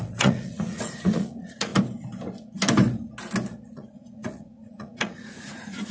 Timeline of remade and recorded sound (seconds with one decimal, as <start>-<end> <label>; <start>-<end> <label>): 0.0-1.7 remade; 1.7-3.7 recorded; 3.7-5.9 remade